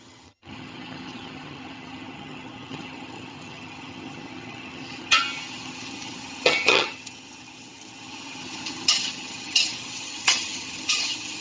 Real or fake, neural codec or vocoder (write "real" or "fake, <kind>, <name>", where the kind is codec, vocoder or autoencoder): fake, vocoder, HiFi-GAN